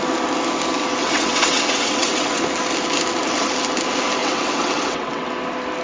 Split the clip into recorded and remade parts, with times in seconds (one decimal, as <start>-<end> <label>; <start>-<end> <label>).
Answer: 0.0-1.0 recorded; 1.0-2.4 remade; 2.4-4.2 recorded; 4.2-5.3 remade; 5.3-5.8 recorded